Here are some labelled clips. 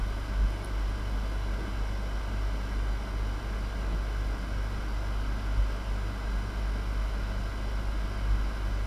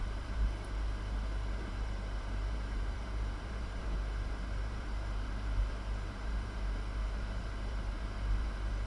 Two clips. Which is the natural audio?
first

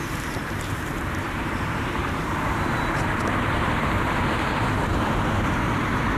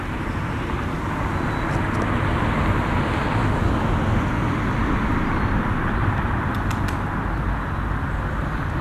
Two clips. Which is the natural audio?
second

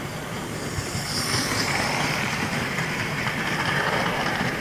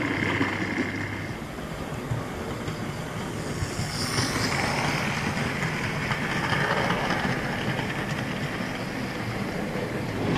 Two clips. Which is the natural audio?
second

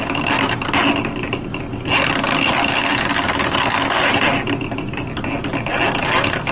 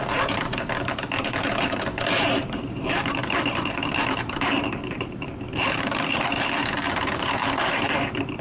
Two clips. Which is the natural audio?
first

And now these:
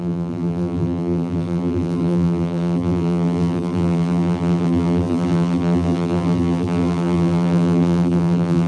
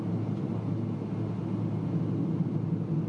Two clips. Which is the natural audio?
second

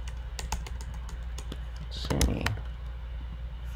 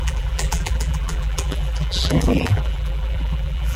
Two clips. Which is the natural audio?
first